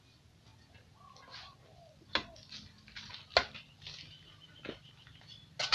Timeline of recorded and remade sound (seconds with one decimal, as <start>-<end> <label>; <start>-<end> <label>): 0.0-5.7 recorded